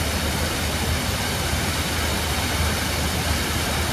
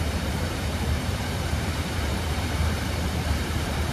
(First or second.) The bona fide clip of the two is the first